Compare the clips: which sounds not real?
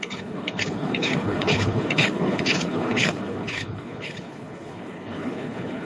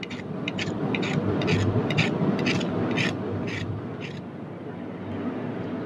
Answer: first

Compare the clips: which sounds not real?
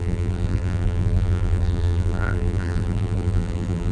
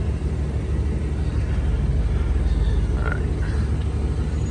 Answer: first